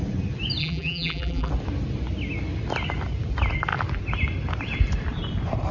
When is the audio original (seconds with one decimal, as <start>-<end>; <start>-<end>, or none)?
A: 0.0-0.6; 1.5-5.7